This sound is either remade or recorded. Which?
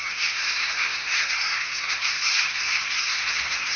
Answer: remade